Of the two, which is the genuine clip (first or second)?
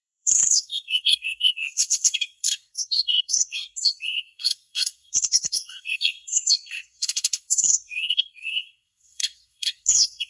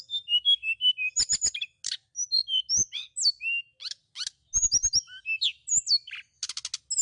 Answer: second